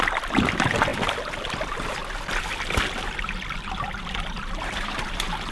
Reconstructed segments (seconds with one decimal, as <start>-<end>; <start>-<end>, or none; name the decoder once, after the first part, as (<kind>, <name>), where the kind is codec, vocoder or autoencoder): 0.0-2.0 (vocoder, BigVGAN v2); 3.4-5.5